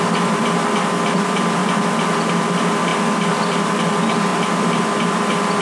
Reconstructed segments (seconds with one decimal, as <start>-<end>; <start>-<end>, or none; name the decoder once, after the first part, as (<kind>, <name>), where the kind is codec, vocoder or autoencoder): none